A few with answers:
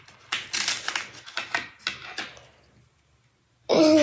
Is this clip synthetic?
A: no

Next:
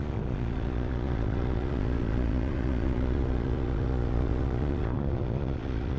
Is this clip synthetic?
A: yes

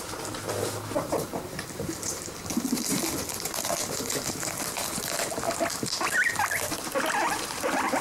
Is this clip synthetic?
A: no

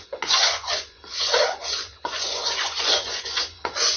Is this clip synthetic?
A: yes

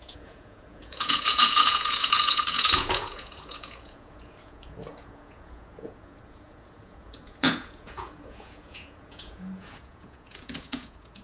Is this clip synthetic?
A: yes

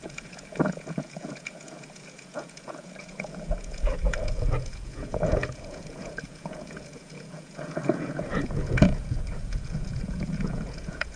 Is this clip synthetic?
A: yes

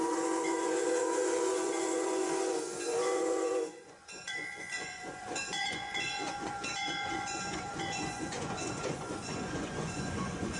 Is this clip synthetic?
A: yes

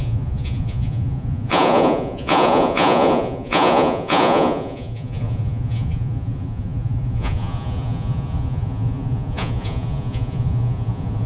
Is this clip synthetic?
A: yes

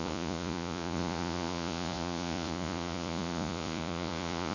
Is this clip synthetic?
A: yes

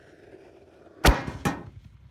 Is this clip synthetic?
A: no